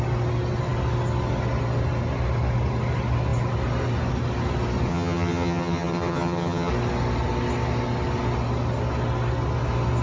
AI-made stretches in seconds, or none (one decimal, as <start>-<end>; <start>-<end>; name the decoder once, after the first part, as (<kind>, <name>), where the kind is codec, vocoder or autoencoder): 4.9-6.7 (vocoder, HiFi-GAN)